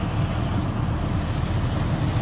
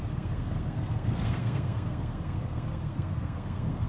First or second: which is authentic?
first